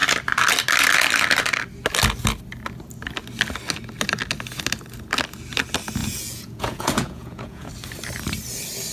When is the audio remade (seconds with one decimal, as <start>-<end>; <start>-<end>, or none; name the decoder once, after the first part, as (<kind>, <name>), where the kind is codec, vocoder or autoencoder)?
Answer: 6.0-7.7 (vocoder, Vocos)